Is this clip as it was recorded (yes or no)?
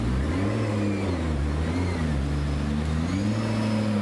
yes